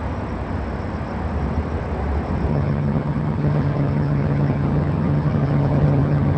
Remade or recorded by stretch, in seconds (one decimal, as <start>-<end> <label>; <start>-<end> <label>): 0.0-2.5 recorded; 2.5-6.4 remade